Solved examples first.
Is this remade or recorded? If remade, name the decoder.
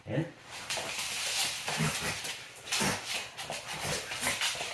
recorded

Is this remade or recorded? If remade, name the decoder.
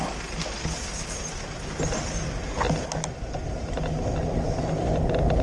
recorded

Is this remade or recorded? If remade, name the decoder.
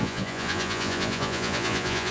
remade, vocoder, Vocos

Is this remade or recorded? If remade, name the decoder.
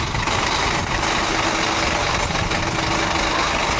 recorded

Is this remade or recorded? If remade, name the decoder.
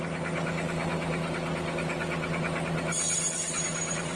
recorded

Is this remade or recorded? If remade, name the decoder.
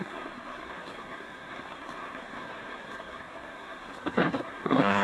remade, codec, SNAC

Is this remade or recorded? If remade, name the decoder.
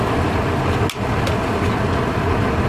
recorded